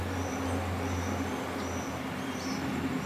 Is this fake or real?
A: real